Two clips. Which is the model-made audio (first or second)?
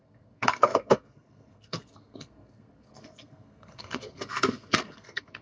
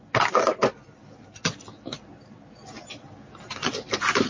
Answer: first